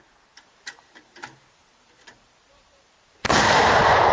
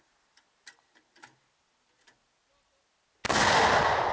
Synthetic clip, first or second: first